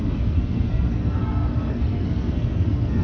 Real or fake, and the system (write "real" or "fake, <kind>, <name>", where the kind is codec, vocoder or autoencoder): fake, codec, SNAC